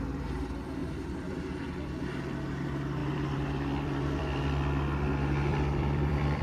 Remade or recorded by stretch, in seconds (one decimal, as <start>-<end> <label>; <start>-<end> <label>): 0.0-0.8 recorded; 0.8-1.6 remade; 1.6-3.0 recorded; 3.0-4.4 remade; 4.4-5.5 recorded; 5.5-6.4 remade

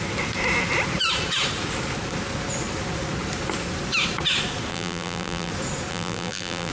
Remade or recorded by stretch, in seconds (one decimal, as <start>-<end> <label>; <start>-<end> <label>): 0.0-4.7 recorded; 4.7-5.5 remade; 5.5-5.9 recorded; 5.9-6.7 remade

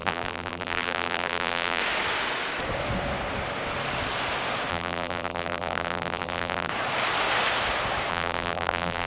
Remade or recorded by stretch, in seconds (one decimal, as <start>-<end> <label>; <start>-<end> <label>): 0.0-1.8 remade; 1.8-4.7 recorded; 4.7-6.7 remade; 6.7-8.1 recorded; 8.1-9.1 remade

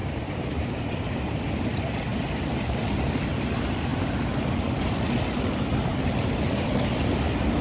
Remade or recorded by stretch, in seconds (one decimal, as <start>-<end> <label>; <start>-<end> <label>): 0.0-1.4 remade; 1.4-2.1 recorded; 2.1-3.2 remade; 3.2-5.9 recorded; 5.9-7.0 remade; 7.0-7.6 recorded

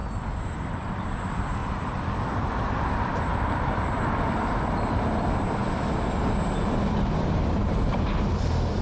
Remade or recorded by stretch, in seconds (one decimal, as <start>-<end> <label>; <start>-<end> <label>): 0.0-8.8 remade

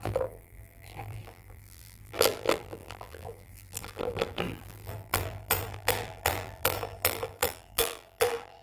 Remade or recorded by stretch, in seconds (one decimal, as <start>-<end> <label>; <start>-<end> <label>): 0.0-8.6 remade